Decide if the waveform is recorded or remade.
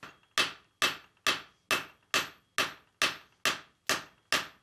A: recorded